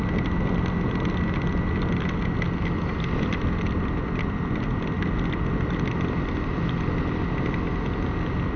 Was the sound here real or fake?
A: real